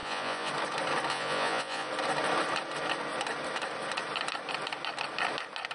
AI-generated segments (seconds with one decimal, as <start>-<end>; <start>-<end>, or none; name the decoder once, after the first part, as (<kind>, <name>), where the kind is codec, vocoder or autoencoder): 0.0-0.5 (vocoder, Vocos); 1.1-1.9